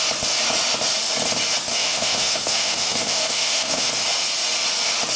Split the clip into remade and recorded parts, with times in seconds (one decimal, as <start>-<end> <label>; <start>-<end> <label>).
0.0-1.7 recorded; 1.7-3.9 remade; 3.9-5.2 recorded